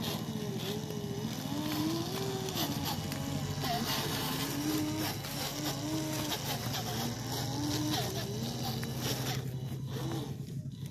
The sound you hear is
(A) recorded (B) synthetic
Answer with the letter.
A